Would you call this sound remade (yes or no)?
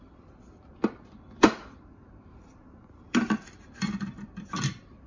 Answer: yes